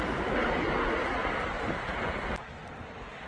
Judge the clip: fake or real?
real